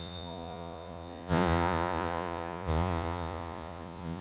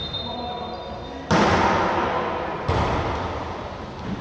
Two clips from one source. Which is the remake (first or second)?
first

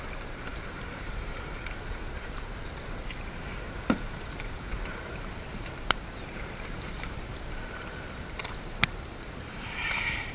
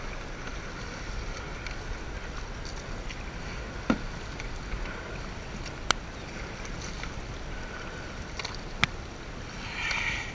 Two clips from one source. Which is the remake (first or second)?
first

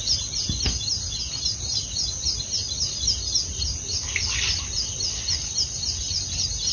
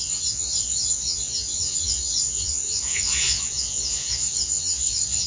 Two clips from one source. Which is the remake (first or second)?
second